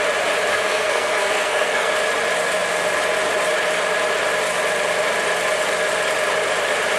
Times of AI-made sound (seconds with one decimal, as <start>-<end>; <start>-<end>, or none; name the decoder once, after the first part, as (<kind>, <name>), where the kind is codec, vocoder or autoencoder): 0.5-1.9 (codec, SNAC)